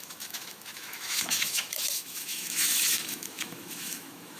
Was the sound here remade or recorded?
remade